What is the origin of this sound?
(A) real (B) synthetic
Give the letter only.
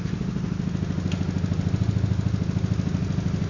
A